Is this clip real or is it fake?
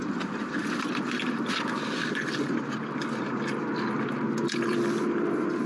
fake